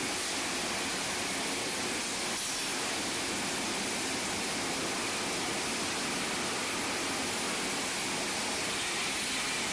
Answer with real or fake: real